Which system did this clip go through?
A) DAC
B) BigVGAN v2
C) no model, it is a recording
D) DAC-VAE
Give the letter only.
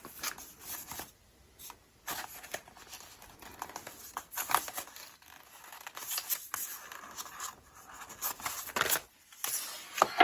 C